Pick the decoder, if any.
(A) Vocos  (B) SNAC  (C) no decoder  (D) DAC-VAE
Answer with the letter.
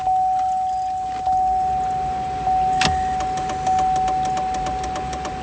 C